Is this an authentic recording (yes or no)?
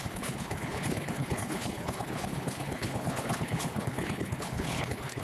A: no